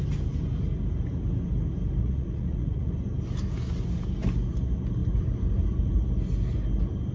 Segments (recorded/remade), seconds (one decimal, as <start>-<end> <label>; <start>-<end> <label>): 0.0-2.0 recorded; 2.0-2.9 remade; 2.9-7.1 recorded